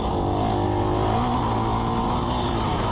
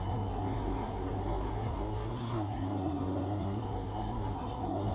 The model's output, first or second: second